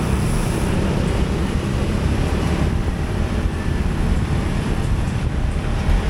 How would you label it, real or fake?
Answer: fake